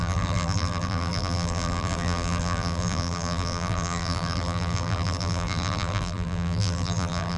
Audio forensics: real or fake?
fake